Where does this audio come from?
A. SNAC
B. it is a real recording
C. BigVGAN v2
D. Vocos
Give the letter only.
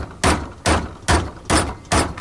B